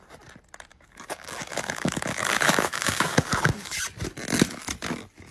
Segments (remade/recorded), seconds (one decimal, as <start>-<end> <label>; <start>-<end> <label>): 0.0-0.7 recorded; 0.7-3.8 remade; 3.8-5.3 recorded